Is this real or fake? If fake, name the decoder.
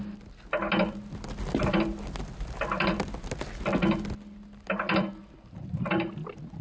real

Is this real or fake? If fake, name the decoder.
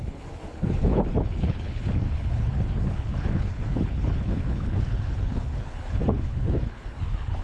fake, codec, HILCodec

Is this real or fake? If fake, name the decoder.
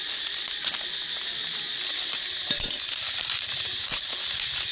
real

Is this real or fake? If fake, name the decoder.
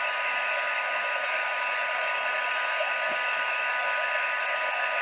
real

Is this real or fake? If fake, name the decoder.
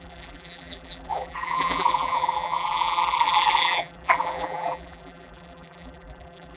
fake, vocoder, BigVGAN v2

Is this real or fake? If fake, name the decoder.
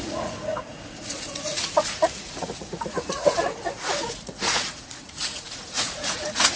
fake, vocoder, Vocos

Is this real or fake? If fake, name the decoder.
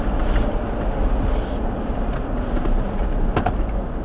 real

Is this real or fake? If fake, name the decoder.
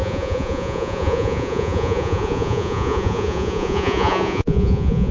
fake, vocoder, Vocos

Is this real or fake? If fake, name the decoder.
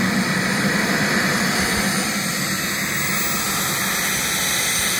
real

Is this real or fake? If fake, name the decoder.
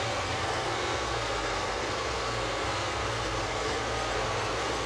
fake, codec, SNAC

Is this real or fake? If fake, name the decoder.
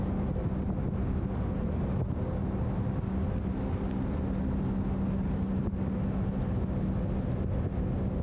real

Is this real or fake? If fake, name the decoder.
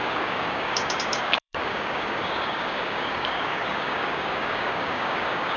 fake, codec, DAC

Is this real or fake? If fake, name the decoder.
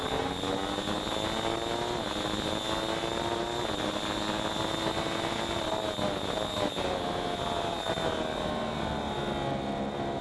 real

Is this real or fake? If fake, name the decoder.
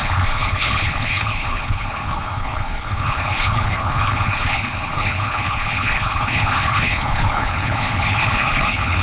fake, codec, HILCodec